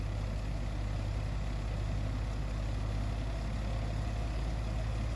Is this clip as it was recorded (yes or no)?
yes